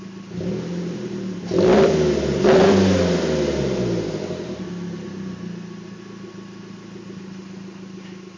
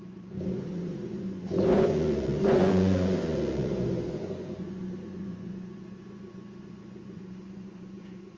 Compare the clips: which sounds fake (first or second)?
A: second